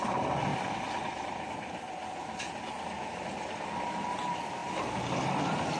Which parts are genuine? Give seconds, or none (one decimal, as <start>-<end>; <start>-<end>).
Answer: 0.0-5.8